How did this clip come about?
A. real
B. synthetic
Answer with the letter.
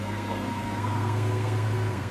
B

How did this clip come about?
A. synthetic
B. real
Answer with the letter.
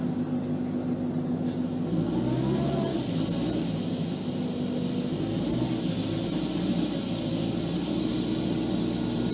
B